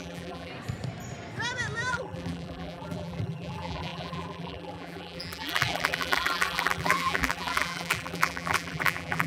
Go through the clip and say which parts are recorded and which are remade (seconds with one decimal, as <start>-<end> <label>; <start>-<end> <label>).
0.0-0.5 remade; 0.5-1.9 recorded; 1.9-9.3 remade